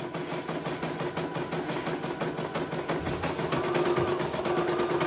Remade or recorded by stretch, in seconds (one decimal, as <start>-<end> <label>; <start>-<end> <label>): 0.0-5.1 recorded